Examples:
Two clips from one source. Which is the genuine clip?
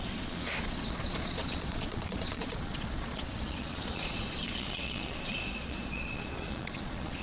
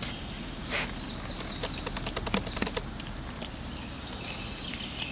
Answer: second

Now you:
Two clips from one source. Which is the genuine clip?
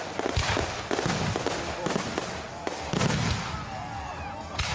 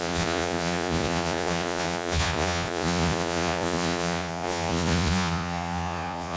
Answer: first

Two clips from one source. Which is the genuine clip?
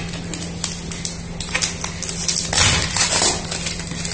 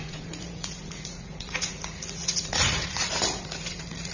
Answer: first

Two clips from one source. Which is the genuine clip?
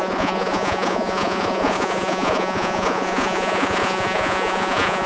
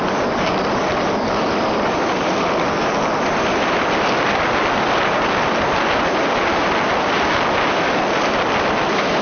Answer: second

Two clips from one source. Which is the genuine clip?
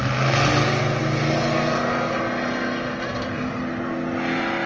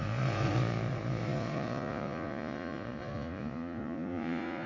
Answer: first